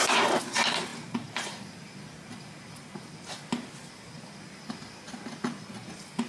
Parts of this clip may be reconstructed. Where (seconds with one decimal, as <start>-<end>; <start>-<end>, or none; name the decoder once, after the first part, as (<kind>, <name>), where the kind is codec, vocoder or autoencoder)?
none